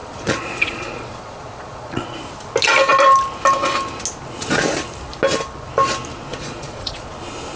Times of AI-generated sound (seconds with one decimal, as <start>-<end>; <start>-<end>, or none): 0.0-2.2; 6.3-7.1